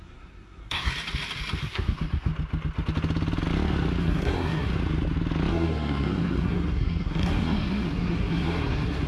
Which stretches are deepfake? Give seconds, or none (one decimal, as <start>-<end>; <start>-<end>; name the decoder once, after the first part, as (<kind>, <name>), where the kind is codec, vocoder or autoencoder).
0.0-0.9 (codec, SNAC); 1.6-2.3; 4.0-4.7; 5.5-9.1